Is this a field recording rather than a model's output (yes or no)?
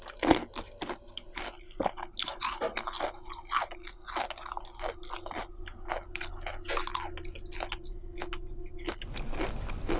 yes